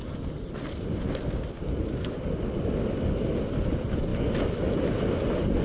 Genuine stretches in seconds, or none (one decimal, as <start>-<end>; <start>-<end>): 0.0-5.6